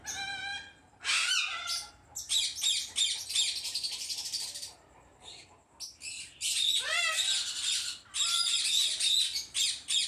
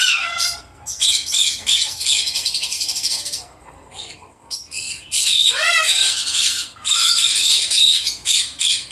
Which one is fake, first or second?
second